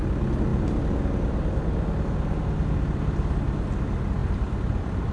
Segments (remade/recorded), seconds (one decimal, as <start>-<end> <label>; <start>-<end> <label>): 0.0-5.1 recorded